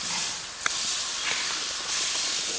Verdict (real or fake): real